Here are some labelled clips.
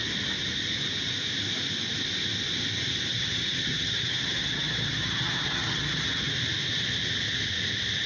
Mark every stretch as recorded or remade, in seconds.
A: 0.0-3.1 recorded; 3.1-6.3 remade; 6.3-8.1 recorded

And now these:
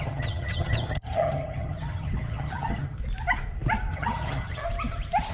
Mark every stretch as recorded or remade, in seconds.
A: 0.0-3.0 remade; 3.0-3.9 recorded; 3.9-4.6 remade; 4.6-5.3 recorded

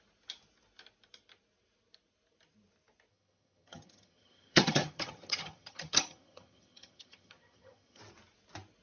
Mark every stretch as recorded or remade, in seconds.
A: 0.0-3.1 recorded; 3.1-8.0 remade; 8.0-8.8 recorded